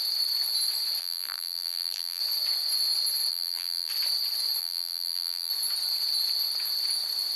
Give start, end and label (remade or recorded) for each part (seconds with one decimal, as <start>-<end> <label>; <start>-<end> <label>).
0.0-1.0 recorded; 1.0-2.2 remade; 2.2-3.3 recorded; 3.3-3.9 remade; 3.9-4.6 recorded; 4.6-5.5 remade; 5.5-7.4 recorded